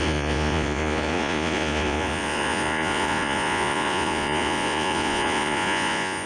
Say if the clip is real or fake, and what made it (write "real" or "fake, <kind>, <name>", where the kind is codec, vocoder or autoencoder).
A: fake, vocoder, Vocos